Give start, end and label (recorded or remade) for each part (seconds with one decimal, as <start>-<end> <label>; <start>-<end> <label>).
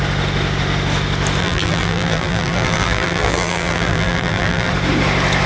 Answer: 0.0-1.4 recorded; 1.4-4.7 remade; 4.7-5.5 recorded